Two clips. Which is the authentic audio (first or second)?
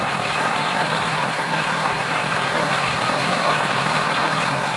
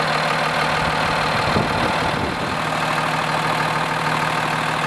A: second